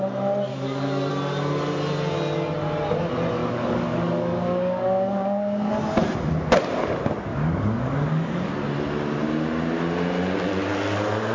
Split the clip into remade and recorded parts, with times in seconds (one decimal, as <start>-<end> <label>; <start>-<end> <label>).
0.0-0.5 recorded; 0.5-1.1 remade; 1.1-3.4 recorded; 3.4-5.7 remade; 5.7-7.3 recorded; 7.3-8.5 remade; 8.5-11.3 recorded